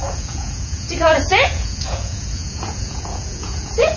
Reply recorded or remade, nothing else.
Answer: remade